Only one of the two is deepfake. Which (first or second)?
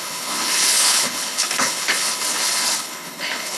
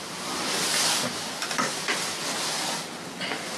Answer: first